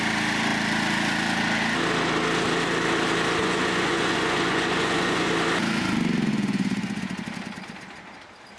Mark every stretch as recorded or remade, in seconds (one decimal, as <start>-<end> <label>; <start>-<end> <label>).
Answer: 0.0-3.4 recorded; 3.4-5.3 remade; 5.3-6.3 recorded; 6.3-7.0 remade; 7.0-8.6 recorded